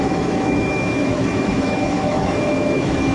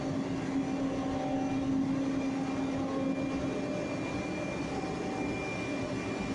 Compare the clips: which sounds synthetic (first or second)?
first